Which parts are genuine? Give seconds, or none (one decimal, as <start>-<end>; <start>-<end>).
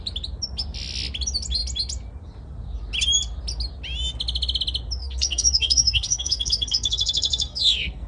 0.0-5.0